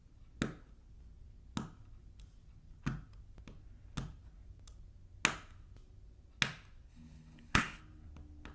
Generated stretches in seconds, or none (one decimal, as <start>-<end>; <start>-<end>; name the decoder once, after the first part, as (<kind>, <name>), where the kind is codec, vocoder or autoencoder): 6.9-7.8 (codec, HILCodec)